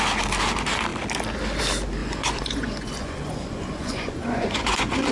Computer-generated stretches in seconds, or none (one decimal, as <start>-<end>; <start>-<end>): 2.0-5.1